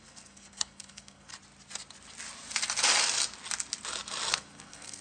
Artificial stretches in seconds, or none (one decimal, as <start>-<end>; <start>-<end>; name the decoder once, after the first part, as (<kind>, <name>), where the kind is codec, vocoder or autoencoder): 0.0-1.3 (codec, SNAC); 4.3-5.0